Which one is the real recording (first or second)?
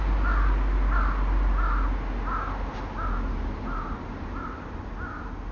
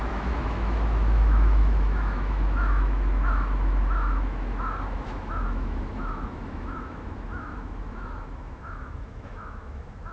first